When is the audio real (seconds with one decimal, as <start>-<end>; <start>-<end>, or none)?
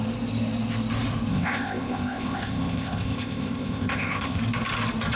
0.0-1.3; 4.4-5.2